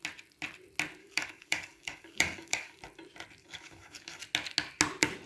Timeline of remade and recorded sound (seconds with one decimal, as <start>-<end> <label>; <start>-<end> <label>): 0.0-1.0 recorded; 1.0-2.8 remade; 2.8-3.4 recorded; 3.4-4.2 remade; 4.2-5.3 recorded